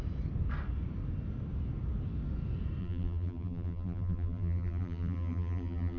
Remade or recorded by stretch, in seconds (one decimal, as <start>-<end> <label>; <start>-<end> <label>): 0.0-2.8 recorded; 2.8-6.0 remade